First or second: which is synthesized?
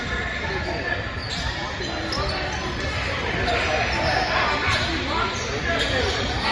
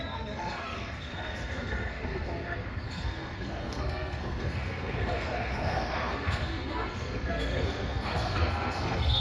second